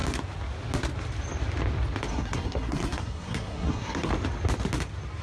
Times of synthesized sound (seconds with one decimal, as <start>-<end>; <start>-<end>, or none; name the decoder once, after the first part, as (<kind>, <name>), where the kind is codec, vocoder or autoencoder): 2.1-4.1 (codec, SNAC)